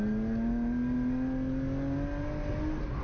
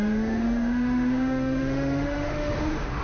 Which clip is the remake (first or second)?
second